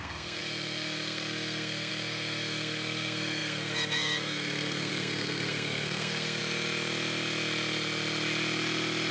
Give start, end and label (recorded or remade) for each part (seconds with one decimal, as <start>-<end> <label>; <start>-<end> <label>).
0.0-6.4 remade; 6.4-9.1 recorded